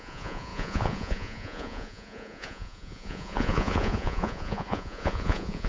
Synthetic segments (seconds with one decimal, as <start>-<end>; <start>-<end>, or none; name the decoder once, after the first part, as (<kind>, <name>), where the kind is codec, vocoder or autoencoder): 0.0-5.7 (vocoder, Vocos)